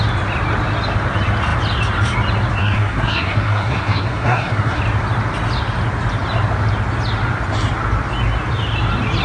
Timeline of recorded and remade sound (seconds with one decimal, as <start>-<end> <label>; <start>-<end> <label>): 0.0-2.6 recorded; 2.6-4.8 remade; 4.8-9.2 recorded